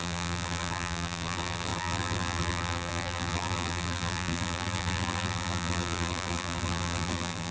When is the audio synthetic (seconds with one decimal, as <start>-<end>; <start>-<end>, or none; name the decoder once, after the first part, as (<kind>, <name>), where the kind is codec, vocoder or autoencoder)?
0.0-7.5 (vocoder, BigVGAN v2)